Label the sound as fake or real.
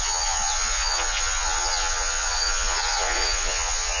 fake